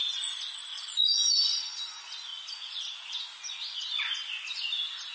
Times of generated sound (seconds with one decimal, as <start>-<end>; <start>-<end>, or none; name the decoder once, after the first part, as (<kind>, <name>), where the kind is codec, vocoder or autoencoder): 0.7-1.6 (vocoder, Vocos); 2.3-3.1